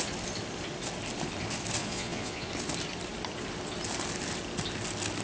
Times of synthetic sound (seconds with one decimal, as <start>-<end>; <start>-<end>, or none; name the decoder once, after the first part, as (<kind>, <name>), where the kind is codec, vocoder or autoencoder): 1.8-2.5 (vocoder, Vocos)